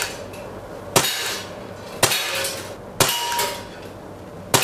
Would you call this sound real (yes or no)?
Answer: yes